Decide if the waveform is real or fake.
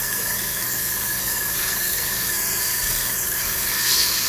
fake